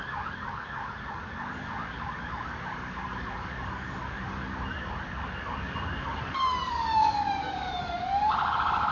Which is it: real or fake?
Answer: fake